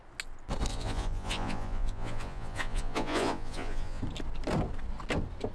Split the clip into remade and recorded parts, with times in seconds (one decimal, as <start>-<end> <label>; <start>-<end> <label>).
0.0-0.7 recorded; 0.7-4.0 remade; 4.0-5.5 recorded